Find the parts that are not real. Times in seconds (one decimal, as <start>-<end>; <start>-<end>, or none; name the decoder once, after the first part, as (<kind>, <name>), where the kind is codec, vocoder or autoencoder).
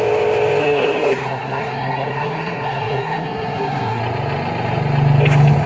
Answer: 0.6-4.0 (codec, SNAC)